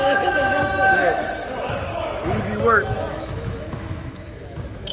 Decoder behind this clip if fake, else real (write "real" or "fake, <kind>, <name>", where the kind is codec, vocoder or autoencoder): fake, autoencoder, DAC-VAE